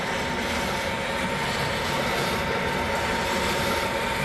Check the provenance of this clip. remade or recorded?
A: recorded